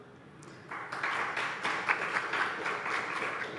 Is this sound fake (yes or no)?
no